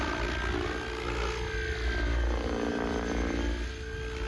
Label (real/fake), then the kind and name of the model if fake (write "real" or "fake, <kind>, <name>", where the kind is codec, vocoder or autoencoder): real